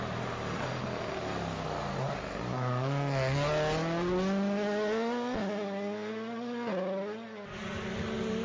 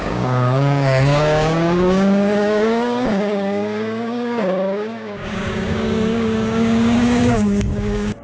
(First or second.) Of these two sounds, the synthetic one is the second